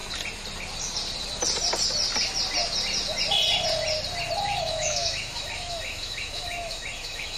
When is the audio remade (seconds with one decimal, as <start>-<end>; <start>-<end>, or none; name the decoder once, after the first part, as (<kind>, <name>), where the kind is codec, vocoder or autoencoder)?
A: 4.4-7.4 (autoencoder, DAC-VAE)